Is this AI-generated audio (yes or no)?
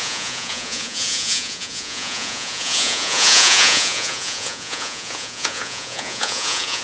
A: yes